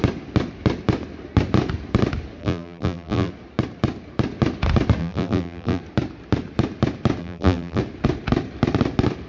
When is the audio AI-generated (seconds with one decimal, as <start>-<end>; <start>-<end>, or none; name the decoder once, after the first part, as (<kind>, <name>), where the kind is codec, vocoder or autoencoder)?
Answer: 2.4-3.3 (vocoder, BigVGAN v2); 5.0-5.8; 7.2-7.8